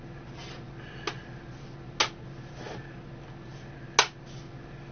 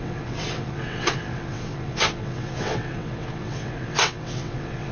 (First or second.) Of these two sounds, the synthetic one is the second